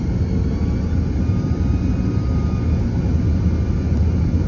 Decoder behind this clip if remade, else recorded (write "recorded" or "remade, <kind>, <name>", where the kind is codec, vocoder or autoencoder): recorded